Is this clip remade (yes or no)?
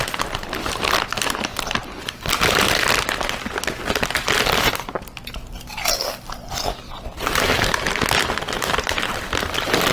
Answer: no